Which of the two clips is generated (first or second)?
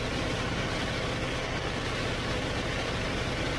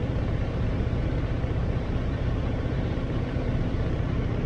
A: second